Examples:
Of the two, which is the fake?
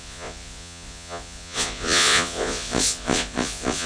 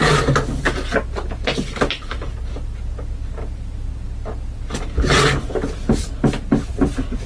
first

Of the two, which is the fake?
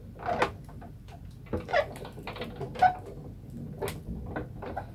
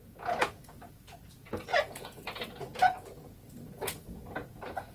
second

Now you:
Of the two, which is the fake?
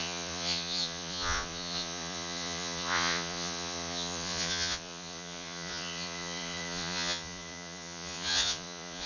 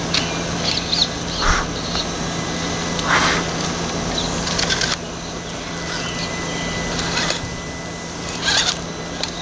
first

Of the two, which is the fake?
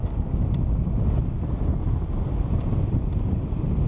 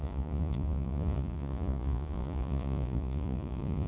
second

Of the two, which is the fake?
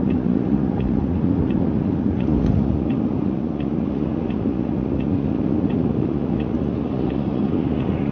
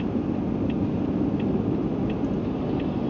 first